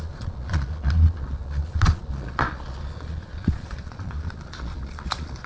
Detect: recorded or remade remade